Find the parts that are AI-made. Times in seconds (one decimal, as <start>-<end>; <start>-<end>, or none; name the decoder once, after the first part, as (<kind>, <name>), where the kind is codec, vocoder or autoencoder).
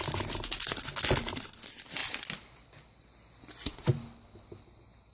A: none